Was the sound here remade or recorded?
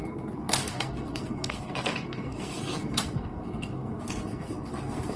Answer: remade